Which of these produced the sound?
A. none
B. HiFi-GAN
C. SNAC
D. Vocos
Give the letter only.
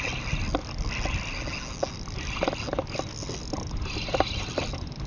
A